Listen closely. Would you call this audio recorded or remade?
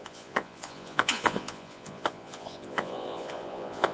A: remade